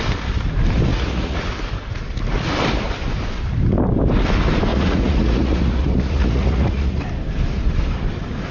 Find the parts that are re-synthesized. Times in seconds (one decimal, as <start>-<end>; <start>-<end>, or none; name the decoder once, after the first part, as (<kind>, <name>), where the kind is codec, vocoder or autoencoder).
0.9-1.5 (vocoder, Vocos); 4.7-7.0